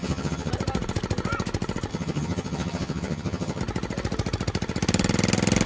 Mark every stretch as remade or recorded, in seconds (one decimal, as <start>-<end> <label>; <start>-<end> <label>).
0.0-0.5 remade; 0.5-1.9 recorded; 1.9-3.6 remade; 3.6-5.7 recorded